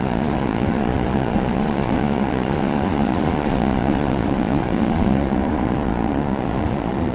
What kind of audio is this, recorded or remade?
remade